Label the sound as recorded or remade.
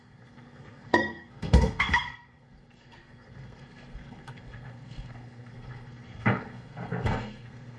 remade